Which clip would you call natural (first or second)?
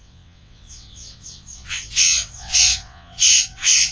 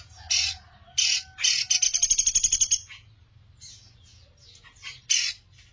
second